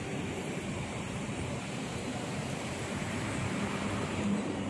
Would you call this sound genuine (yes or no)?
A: no